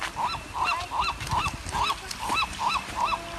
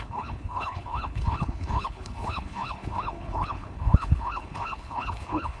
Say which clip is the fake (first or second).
second